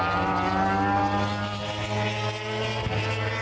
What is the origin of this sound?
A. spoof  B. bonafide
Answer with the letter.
B